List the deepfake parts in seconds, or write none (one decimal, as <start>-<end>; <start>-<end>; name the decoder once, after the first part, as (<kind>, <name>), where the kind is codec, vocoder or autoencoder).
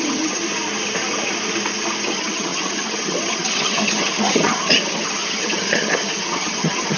0.0-0.4 (vocoder, HiFi-GAN); 2.1-7.0